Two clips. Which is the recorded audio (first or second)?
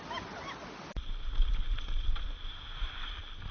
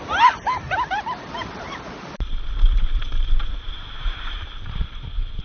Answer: first